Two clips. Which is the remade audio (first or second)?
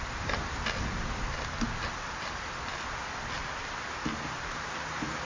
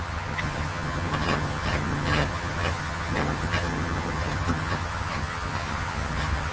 second